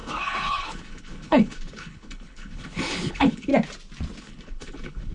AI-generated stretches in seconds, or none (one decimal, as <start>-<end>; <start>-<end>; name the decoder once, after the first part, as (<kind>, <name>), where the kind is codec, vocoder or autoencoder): 0.0-3.5 (codec, HILCodec); 4.2-5.1